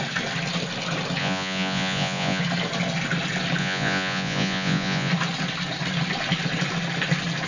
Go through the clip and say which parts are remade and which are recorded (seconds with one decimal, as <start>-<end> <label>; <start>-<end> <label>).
0.0-1.2 recorded; 1.2-2.4 remade; 2.4-3.6 recorded; 3.6-5.1 remade; 5.1-7.5 recorded